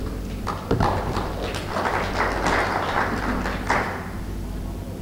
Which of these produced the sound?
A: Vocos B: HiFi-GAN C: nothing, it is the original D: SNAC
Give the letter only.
C